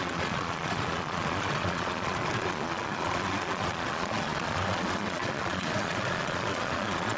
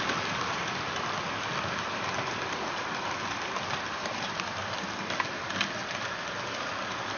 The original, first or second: second